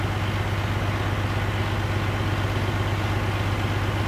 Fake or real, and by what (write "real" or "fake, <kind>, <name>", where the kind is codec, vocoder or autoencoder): real